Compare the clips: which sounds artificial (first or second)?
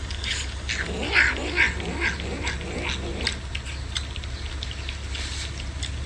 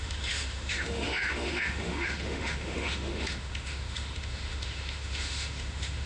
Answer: second